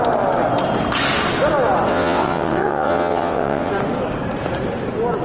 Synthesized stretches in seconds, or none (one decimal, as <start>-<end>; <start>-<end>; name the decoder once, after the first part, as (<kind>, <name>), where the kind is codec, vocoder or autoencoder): 1.9-3.7 (vocoder, WaveNeXt)